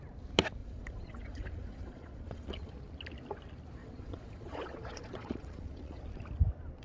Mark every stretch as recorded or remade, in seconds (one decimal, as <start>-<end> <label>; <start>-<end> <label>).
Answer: 0.0-0.6 recorded; 0.6-2.7 remade; 2.7-3.8 recorded; 3.8-6.0 remade; 6.0-6.8 recorded